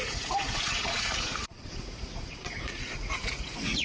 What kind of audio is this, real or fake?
fake